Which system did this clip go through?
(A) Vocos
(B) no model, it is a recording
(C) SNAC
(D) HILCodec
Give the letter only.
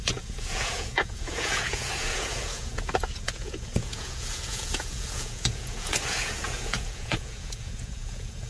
A